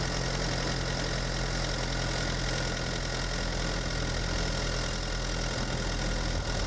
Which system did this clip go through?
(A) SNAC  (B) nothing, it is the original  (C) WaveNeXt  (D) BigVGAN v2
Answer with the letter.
B